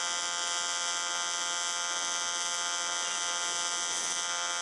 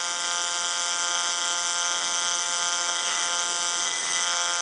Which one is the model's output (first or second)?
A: second